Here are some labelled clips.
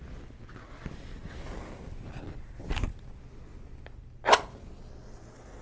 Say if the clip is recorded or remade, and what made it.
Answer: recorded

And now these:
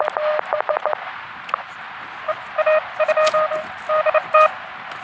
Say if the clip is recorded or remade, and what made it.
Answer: recorded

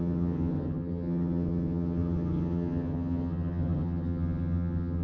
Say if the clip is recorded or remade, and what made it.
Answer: remade, vocoder, HiFi-GAN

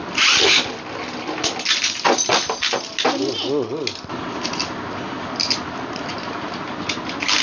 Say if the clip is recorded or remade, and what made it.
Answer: recorded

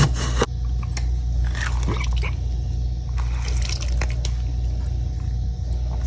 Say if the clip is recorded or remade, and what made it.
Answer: recorded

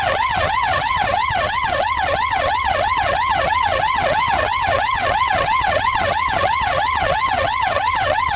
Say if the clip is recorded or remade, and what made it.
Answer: remade, vocoder, HiFi-GAN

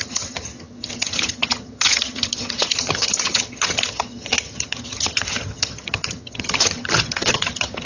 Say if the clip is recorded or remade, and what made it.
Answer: remade, vocoder, HiFi-GAN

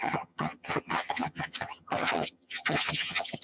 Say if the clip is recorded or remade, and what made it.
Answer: remade, vocoder, HiFi-GAN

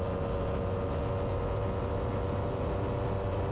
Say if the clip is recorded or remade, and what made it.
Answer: recorded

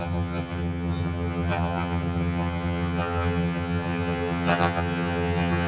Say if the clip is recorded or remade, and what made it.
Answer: remade, vocoder, HiFi-GAN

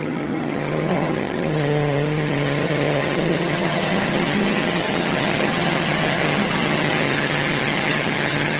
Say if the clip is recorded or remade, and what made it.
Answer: remade, vocoder, HiFi-GAN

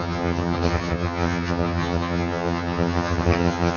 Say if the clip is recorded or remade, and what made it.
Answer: remade, vocoder, HiFi-GAN